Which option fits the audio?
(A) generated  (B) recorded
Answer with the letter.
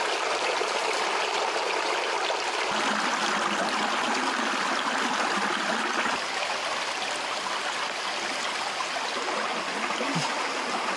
B